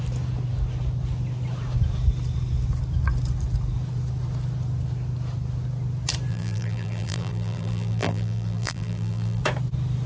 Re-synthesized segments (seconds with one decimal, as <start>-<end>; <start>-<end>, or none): 6.3-9.4